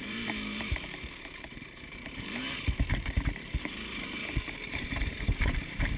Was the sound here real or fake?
fake